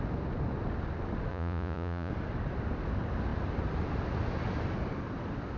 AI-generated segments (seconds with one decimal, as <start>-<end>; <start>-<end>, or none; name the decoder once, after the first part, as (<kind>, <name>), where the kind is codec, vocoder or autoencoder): 1.3-2.1 (vocoder, Vocos)

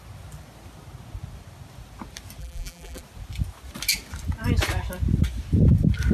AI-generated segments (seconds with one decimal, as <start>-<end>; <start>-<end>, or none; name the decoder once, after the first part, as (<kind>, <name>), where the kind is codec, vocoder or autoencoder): 2.4-3.0 (vocoder, BigVGAN v2)